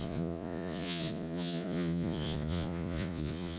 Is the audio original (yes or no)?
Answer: no